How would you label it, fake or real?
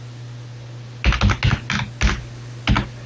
real